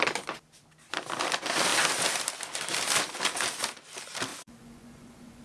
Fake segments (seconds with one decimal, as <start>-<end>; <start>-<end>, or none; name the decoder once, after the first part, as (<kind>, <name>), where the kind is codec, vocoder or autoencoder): 4.3-5.4 (vocoder, Vocos)